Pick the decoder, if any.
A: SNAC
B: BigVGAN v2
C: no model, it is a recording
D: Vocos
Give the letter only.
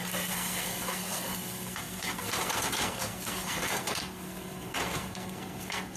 A